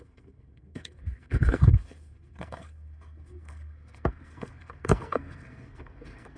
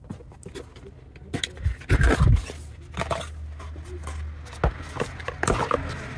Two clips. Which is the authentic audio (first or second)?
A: second